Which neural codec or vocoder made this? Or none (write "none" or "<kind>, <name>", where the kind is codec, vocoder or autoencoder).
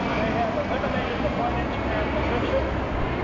none